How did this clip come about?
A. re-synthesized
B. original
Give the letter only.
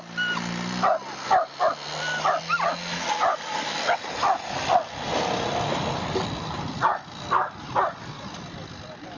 B